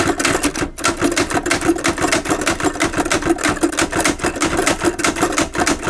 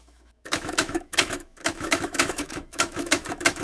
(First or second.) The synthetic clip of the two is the second